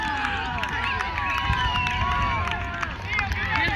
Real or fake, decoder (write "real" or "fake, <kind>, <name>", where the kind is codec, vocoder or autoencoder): real